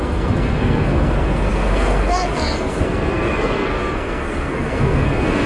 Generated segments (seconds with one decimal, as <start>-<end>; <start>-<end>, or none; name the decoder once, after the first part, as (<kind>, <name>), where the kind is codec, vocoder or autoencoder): 0.0-5.5 (codec, SNAC)